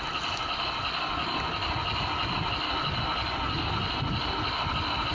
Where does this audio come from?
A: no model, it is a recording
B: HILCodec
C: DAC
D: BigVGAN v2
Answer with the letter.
A